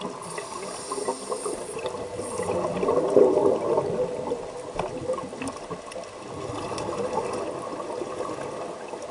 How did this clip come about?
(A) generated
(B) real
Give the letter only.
B